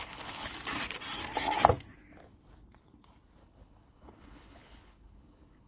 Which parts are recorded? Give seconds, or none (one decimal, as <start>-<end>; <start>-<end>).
0.5-3.4